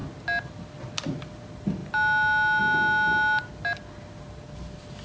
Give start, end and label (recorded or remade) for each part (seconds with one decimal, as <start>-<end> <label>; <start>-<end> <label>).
0.0-5.0 recorded